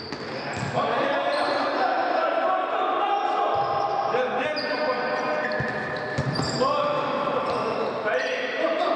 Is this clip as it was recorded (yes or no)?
yes